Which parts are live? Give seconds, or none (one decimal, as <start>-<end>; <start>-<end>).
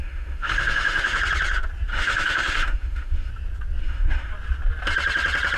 1.2-1.9; 3.3-3.8; 4.3-5.6